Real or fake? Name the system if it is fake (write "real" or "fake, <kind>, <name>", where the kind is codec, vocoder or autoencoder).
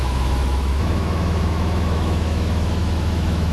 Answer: fake, autoencoder, DAC-VAE